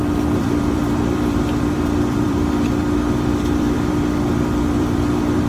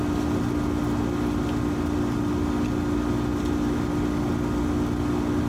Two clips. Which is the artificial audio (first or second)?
first